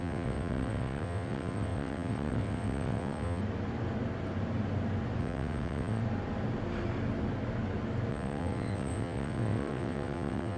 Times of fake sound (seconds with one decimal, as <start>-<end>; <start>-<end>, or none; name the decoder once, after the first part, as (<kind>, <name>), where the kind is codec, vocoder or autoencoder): 0.0-3.4 (vocoder, WaveNeXt); 5.2-6.0; 8.1-10.6